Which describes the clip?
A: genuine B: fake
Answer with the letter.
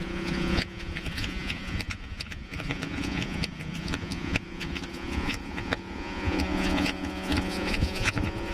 B